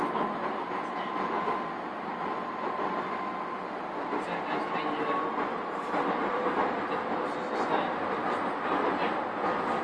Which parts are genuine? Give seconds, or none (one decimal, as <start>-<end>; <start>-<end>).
0.0-5.5; 6.8-9.8